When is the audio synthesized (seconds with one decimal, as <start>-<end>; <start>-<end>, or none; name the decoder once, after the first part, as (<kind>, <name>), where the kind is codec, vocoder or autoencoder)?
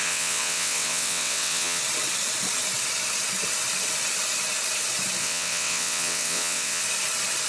0.0-1.8 (vocoder, WaveNeXt); 5.2-6.8